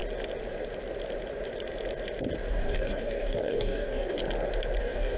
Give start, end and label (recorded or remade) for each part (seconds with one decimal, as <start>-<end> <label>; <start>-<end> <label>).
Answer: 0.0-2.5 recorded; 2.5-4.2 remade; 4.2-4.8 recorded; 4.8-5.2 remade